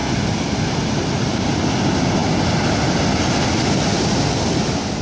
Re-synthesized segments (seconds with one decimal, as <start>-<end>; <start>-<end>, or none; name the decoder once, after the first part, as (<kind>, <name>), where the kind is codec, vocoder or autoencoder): none